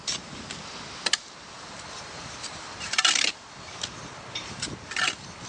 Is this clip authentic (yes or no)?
yes